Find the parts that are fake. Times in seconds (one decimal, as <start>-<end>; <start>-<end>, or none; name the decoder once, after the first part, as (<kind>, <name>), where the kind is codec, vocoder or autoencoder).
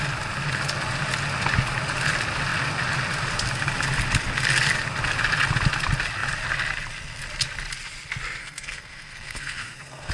8.4-10.1 (codec, SNAC)